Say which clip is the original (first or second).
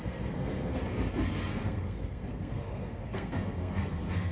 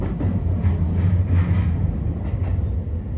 second